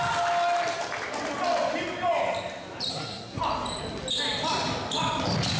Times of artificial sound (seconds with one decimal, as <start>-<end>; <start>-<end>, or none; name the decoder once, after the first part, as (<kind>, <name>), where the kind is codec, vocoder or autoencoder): 2.9-3.4 (codec, SNAC)